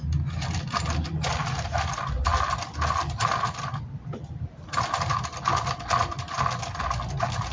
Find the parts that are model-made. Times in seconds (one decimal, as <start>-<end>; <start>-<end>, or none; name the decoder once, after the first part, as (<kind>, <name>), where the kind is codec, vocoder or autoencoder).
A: none

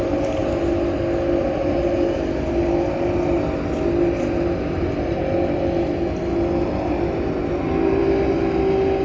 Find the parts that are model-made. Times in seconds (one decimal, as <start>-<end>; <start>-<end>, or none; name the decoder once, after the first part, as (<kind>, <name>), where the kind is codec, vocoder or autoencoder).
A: none

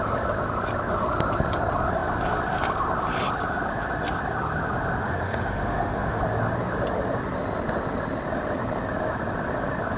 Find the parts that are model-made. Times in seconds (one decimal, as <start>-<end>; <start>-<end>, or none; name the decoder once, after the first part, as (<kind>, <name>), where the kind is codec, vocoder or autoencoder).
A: 5.0-6.2 (autoencoder, DAC-VAE)

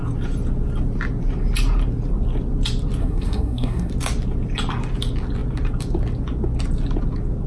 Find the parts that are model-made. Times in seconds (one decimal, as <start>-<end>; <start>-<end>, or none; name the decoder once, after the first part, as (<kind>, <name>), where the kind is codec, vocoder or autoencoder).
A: 3.0-3.9 (codec, SNAC)

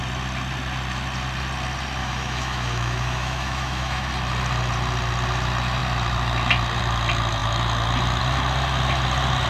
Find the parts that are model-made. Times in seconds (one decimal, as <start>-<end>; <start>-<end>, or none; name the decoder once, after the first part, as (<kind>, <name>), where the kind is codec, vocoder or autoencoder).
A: 2.0-4.1 (autoencoder, DAC-VAE)

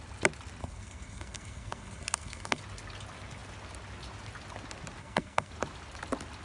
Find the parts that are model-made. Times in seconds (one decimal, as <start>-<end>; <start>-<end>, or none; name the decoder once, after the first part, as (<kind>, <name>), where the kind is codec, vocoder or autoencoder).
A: 0.6-2.6 (codec, SNAC); 5.0-5.5

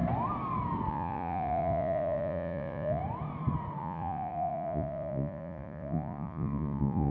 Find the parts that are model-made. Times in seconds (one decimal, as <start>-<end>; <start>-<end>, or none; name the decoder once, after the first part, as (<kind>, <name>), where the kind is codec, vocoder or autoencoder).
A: 0.9-3.0 (vocoder, Vocos); 3.8-7.1

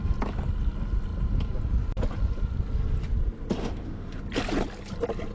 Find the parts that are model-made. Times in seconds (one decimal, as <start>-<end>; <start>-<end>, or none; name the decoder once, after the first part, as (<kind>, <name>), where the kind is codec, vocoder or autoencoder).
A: 3.6-4.2 (autoencoder, DAC-VAE)